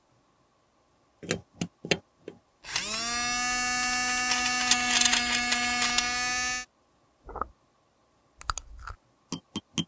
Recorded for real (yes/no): yes